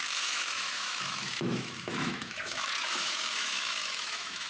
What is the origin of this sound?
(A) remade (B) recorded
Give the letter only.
A